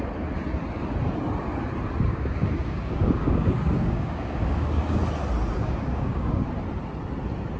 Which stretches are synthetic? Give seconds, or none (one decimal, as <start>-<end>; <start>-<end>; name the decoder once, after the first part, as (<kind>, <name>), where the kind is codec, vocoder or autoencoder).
2.1-5.0 (codec, DAC); 5.6-6.4